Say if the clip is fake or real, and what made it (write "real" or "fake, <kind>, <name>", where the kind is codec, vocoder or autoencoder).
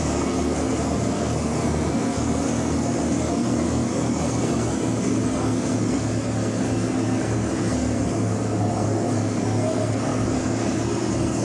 fake, codec, SNAC